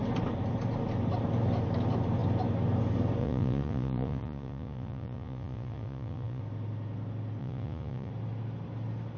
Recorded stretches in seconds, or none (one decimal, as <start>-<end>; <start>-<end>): 0.0-3.2; 6.4-7.4; 8.1-9.2